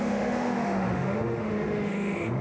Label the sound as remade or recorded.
remade